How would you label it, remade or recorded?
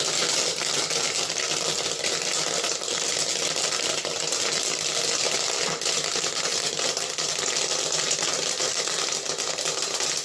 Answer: recorded